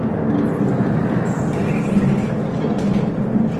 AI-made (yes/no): no